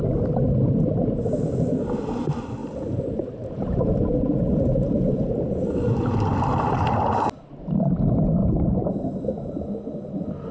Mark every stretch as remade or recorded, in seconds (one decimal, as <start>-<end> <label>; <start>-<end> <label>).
0.0-2.6 recorded; 2.6-3.8 remade; 3.8-8.4 recorded; 8.4-9.7 remade; 9.7-10.5 recorded